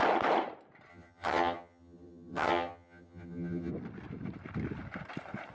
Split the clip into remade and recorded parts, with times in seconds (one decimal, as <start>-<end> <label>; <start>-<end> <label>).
0.0-0.9 recorded; 0.9-3.7 remade; 3.7-5.5 recorded